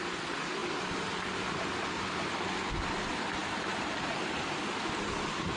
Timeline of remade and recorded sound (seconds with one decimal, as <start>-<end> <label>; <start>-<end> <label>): 0.0-0.6 recorded; 0.6-2.3 remade; 2.3-3.4 recorded; 3.4-4.6 remade; 4.6-5.6 recorded